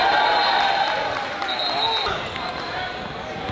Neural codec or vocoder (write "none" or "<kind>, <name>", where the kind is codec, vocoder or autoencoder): none